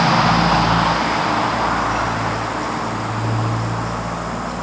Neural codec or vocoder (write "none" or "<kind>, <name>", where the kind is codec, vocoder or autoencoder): none